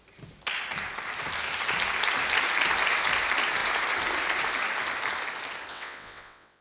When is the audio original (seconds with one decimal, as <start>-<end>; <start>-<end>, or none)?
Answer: 0.0-5.7